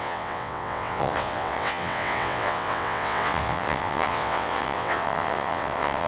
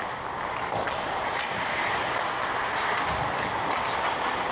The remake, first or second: first